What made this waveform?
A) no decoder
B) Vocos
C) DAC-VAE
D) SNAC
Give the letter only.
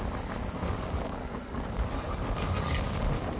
A